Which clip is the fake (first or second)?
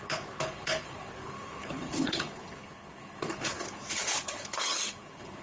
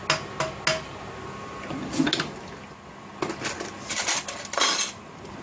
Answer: first